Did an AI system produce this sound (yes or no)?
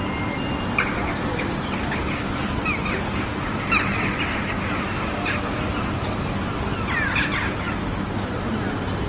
no